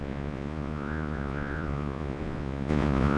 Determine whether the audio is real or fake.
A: fake